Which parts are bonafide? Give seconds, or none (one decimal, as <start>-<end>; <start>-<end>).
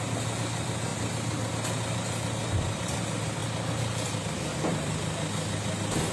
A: 0.0-6.1